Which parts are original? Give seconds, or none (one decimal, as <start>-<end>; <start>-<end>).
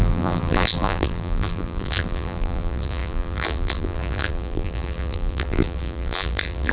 none